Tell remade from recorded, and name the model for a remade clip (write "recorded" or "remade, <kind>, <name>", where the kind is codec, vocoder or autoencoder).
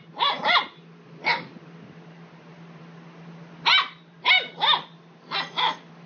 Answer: recorded